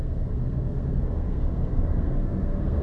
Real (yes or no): no